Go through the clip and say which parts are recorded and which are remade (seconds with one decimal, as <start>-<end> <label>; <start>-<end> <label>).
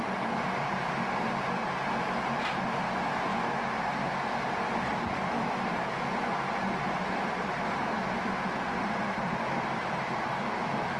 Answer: 0.0-11.0 remade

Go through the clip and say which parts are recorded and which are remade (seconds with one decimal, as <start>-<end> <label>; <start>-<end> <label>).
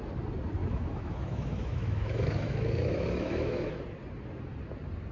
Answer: 0.0-0.6 recorded; 0.6-3.7 remade; 3.7-5.1 recorded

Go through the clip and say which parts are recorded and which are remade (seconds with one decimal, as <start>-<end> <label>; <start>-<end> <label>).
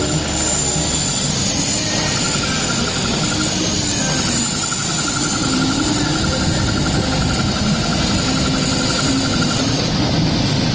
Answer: 0.0-10.7 recorded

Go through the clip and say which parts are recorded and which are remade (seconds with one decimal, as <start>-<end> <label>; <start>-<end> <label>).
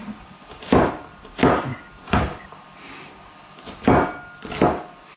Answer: 0.0-1.7 remade; 1.7-4.8 recorded; 4.8-5.2 remade